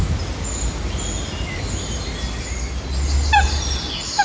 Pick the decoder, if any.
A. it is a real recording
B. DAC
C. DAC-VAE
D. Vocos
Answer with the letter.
A